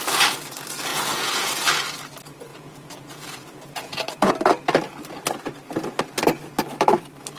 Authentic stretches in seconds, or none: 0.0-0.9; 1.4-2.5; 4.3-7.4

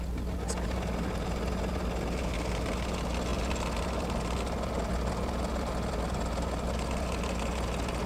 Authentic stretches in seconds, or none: 0.0-8.1

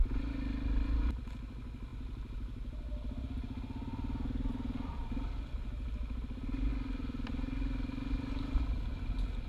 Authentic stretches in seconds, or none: 0.0-9.5

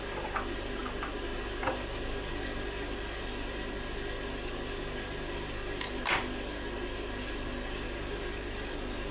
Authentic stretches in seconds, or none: 0.0-9.1

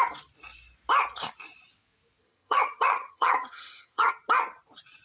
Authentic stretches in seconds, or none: 0.0-2.2; 4.1-5.0

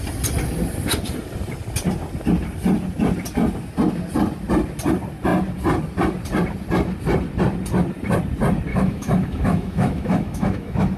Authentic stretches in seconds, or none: 0.0-8.7